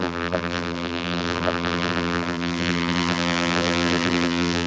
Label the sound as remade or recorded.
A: remade